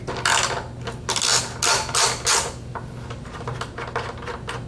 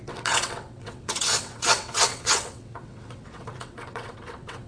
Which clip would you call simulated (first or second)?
second